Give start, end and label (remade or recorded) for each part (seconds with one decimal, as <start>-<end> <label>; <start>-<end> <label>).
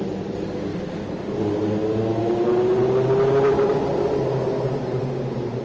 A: 0.0-5.6 recorded